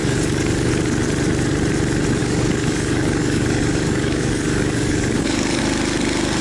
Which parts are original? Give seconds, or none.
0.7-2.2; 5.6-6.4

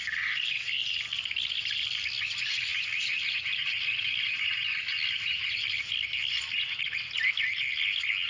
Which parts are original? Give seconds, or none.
0.0-8.3